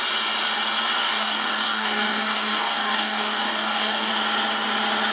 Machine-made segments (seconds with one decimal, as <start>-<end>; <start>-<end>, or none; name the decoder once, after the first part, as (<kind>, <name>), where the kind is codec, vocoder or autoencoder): 1.0-4.1 (codec, DAC)